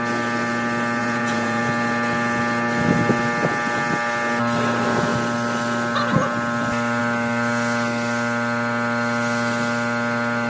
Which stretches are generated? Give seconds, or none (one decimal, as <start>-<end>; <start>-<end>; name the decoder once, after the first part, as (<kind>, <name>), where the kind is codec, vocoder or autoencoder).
1.0-1.6 (vocoder, Vocos)